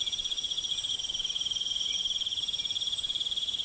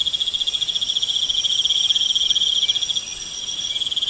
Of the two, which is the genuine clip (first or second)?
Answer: second